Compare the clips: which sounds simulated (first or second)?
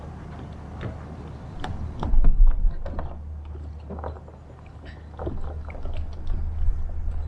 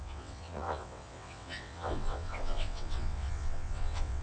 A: second